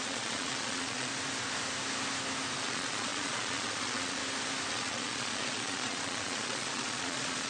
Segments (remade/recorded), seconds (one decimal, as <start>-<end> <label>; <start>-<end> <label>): 0.0-1.1 remade; 1.1-2.6 recorded; 2.6-4.2 remade; 4.2-4.7 recorded; 4.7-7.5 remade